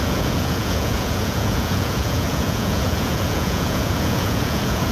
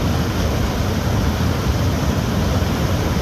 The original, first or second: second